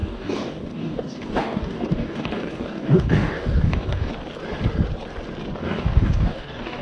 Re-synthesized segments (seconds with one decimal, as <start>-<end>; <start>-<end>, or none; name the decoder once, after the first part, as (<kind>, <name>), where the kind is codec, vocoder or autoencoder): 0.0-4.1 (codec, DAC); 5.6-6.8